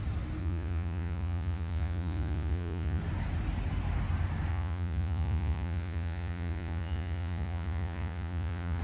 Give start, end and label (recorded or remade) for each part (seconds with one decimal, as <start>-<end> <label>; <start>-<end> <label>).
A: 0.0-0.4 recorded; 0.4-3.0 remade; 3.0-4.5 recorded; 4.5-8.8 remade